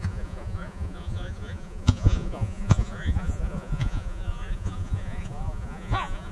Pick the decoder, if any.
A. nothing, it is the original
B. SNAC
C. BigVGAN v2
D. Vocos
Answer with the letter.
D